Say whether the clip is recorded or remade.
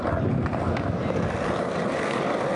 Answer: recorded